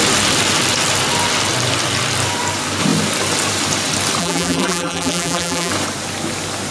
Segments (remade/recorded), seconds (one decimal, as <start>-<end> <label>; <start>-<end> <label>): 0.0-4.2 recorded; 4.2-5.7 remade; 5.7-6.7 recorded